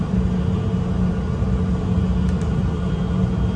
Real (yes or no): yes